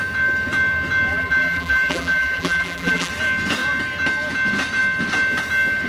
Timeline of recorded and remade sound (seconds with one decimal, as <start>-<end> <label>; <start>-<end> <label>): 0.0-1.1 recorded; 1.1-3.1 remade; 3.1-5.9 recorded